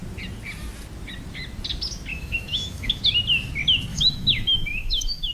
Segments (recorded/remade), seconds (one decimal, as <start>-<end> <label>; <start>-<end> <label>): 0.0-2.1 recorded; 2.1-3.0 remade; 3.0-3.9 recorded; 3.9-5.3 remade